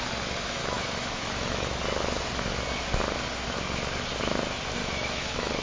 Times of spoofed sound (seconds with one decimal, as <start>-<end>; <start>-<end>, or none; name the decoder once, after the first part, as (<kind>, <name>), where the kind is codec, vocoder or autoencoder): 0.6-1.8 (autoencoder, DAC-VAE); 4.8-5.6